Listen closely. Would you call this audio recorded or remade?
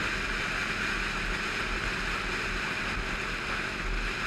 recorded